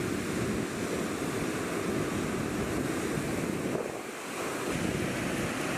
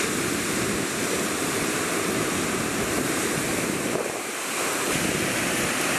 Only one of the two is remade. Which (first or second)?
second